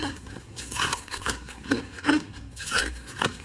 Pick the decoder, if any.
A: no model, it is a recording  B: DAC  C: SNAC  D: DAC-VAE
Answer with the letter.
C